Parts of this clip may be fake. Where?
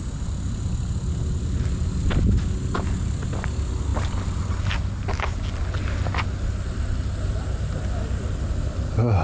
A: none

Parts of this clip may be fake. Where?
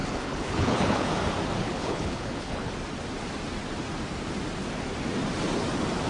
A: 0.0-1.1; 1.6-2.7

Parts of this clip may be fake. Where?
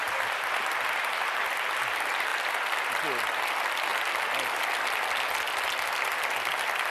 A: none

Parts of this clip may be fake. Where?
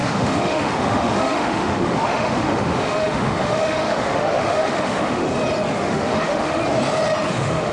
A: 0.0-5.3; 5.8-6.6; 7.3-7.7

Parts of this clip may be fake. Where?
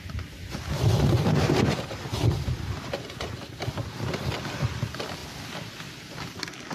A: 0.9-2.0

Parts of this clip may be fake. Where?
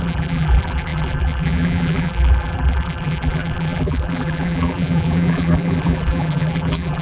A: 0.0-7.0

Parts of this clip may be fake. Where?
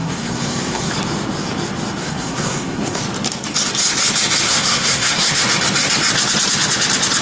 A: 0.0-0.9; 2.0-3.0; 4.5-5.4